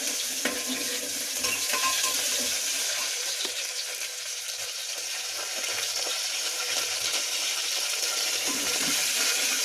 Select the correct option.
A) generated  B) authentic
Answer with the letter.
A